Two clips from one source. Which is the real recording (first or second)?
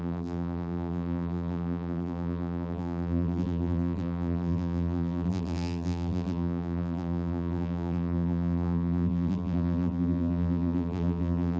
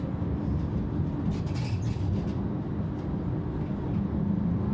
second